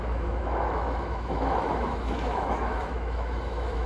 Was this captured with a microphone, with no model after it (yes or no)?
no